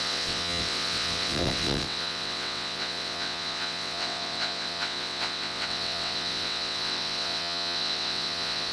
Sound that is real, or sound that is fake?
fake